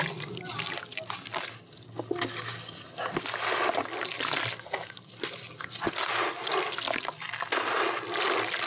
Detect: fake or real real